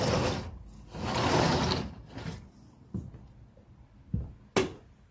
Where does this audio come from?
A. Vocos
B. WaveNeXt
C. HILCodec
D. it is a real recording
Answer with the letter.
D